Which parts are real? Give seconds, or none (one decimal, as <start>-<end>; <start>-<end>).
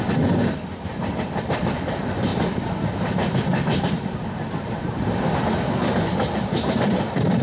0.0-7.4